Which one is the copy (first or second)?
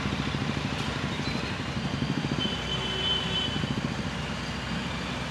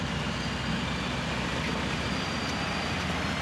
first